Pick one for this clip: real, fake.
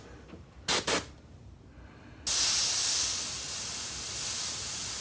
real